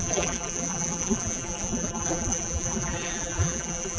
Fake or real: fake